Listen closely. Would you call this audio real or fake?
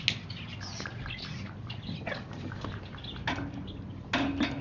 real